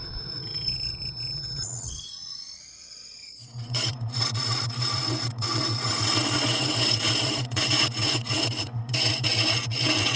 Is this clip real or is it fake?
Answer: fake